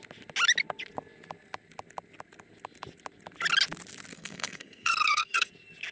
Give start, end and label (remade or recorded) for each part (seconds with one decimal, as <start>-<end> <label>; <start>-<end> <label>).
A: 0.0-4.1 recorded; 4.1-5.5 remade; 5.5-5.9 recorded